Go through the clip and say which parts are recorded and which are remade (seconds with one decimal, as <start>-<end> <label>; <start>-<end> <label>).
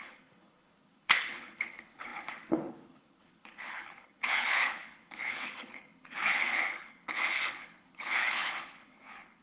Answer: 0.0-9.4 remade